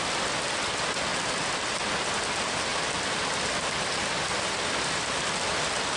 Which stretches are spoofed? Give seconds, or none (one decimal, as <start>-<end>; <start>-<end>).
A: 2.7-5.4